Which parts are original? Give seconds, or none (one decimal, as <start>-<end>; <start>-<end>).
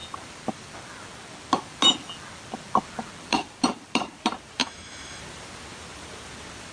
0.0-4.6; 5.2-6.7